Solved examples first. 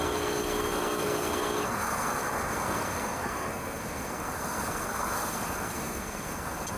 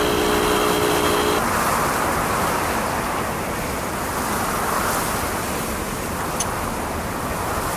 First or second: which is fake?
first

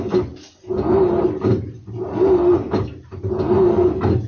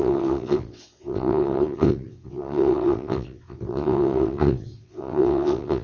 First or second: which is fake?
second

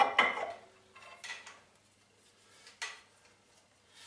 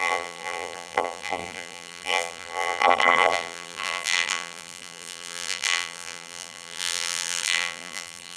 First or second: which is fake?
second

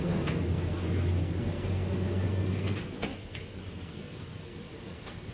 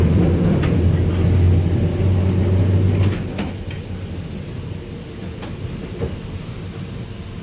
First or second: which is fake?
first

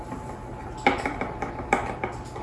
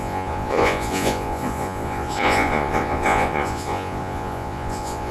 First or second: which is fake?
second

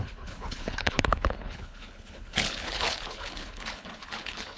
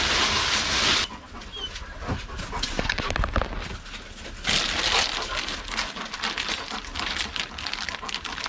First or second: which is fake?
first